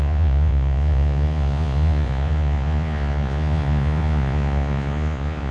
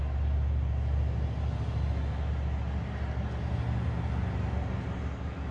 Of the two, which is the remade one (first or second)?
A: first